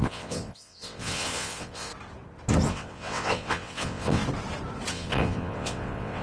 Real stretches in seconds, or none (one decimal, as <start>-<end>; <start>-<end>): 1.9-2.7; 4.2-4.9